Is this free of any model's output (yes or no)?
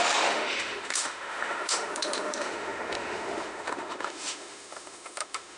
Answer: no